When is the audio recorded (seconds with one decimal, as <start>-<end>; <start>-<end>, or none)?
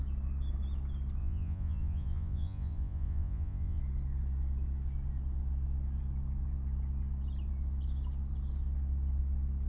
0.0-1.2; 3.8-9.7